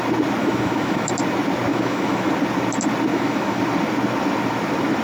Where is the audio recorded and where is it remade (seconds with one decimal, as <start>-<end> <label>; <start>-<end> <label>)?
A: 0.0-0.4 recorded; 0.4-1.1 remade; 1.1-1.7 recorded; 1.7-2.3 remade; 2.3-3.1 recorded; 3.1-3.6 remade; 3.6-5.0 recorded